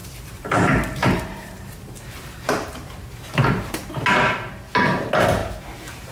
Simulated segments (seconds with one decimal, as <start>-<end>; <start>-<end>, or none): 0.0-3.7; 5.4-6.1